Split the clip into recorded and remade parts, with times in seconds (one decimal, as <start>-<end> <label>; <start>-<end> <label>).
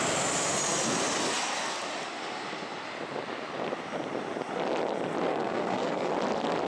0.0-5.3 recorded; 5.3-6.1 remade; 6.1-6.7 recorded